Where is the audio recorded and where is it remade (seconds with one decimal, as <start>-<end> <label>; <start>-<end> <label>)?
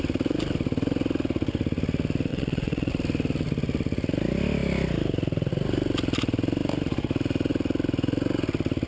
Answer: 0.0-2.3 recorded; 2.3-2.9 remade; 2.9-8.9 recorded